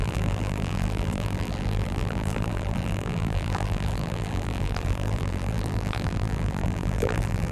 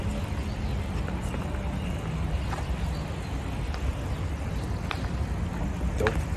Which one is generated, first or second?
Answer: first